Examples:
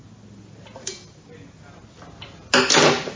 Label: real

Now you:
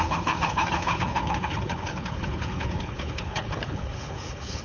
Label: fake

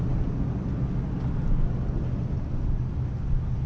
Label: real